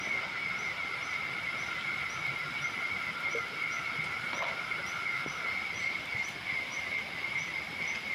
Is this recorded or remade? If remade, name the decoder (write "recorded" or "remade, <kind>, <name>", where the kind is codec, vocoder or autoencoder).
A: recorded